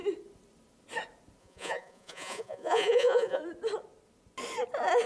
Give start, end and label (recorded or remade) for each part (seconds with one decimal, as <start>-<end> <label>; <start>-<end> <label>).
0.0-1.4 recorded; 1.4-3.4 remade; 3.4-5.1 recorded